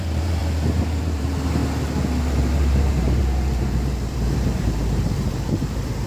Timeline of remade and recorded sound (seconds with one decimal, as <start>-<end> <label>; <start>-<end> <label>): 0.0-0.4 remade; 0.4-1.0 recorded; 1.0-1.6 remade; 1.6-2.2 recorded; 2.2-6.1 remade